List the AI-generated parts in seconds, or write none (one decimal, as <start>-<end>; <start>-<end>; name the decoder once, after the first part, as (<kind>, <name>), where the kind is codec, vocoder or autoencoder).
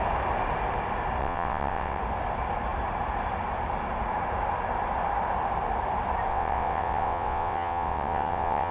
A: 1.2-2.0 (vocoder, WaveNeXt); 6.3-8.7